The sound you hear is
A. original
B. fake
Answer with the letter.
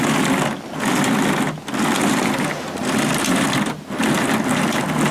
A